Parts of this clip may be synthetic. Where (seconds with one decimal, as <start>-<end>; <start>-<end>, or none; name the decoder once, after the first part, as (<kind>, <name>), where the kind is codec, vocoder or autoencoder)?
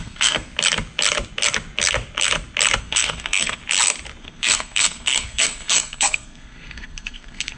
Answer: 0.0-0.5 (codec, SNAC); 2.8-3.6; 4.2-7.6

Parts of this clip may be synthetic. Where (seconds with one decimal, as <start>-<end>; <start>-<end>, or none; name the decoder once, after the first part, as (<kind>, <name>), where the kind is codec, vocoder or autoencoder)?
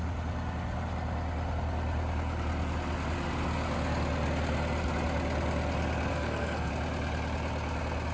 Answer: 6.1-6.7 (codec, SNAC)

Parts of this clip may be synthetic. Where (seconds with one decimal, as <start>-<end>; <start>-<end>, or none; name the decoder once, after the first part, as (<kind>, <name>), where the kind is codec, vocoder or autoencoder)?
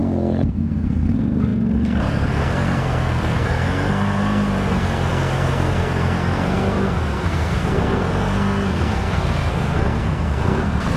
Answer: 0.0-11.0 (codec, SNAC)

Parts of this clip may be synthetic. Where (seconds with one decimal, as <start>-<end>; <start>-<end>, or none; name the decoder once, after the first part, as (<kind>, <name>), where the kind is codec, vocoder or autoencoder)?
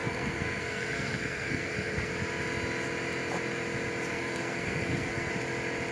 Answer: 0.0-2.1 (codec, SNAC); 4.1-5.3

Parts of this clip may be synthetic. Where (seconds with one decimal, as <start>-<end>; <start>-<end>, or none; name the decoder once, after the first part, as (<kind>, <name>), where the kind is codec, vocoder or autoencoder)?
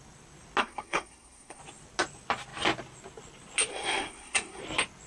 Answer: 0.6-1.6 (codec, SNAC); 3.7-4.6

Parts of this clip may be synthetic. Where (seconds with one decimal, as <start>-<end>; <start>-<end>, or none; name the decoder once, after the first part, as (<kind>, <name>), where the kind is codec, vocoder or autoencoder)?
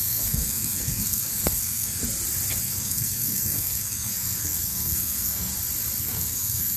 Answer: 0.0-2.0 (codec, SNAC); 2.6-5.5; 6.0-6.8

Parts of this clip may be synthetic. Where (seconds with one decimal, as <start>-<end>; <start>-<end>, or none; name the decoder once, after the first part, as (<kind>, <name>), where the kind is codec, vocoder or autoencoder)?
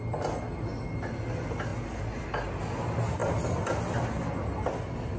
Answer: none